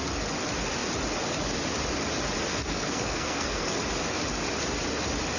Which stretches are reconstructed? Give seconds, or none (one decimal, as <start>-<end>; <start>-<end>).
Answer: 2.5-3.8